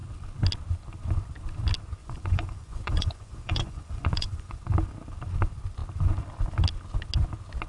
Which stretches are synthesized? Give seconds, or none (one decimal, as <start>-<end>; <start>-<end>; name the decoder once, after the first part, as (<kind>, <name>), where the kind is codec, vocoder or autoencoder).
2.0-4.6 (vocoder, Vocos)